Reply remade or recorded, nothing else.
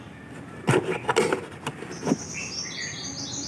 recorded